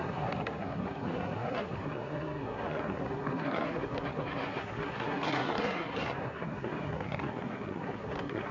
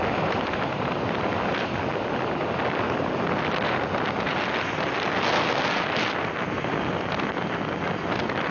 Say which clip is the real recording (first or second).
second